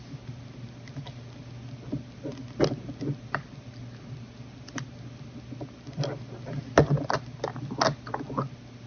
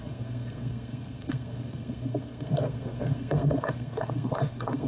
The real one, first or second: first